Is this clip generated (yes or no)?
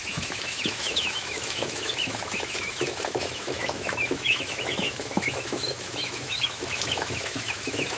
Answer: yes